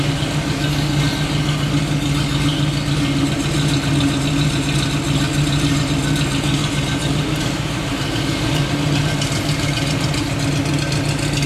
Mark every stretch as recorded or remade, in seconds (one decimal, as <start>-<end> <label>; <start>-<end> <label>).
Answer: 0.0-6.6 recorded; 6.6-10.4 remade; 10.4-11.5 recorded